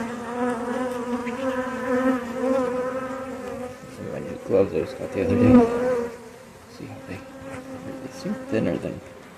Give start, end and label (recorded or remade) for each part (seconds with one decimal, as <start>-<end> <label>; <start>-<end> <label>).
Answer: 0.0-6.5 recorded; 6.5-7.6 remade; 7.6-9.4 recorded